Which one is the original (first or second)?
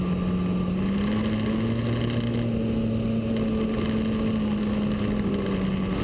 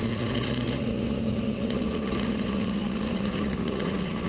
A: first